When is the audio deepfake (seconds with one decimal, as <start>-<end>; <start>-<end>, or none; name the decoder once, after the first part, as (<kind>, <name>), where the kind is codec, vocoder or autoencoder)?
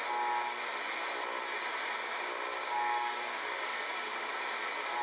2.6-4.3 (codec, DAC)